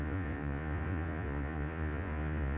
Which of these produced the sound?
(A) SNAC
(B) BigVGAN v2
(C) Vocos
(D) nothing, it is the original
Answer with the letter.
C